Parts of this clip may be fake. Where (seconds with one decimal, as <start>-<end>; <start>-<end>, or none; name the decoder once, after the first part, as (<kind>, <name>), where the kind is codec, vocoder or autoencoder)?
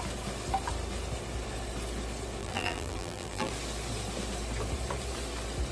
2.4-3.5 (vocoder, BigVGAN v2)